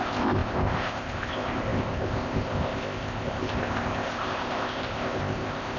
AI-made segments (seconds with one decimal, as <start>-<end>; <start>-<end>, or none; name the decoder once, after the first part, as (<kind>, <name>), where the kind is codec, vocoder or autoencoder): 0.0-5.8 (codec, ZipCodec)